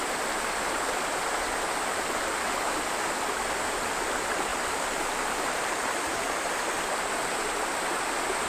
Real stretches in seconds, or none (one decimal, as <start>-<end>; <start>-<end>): 0.0-4.5; 6.5-8.5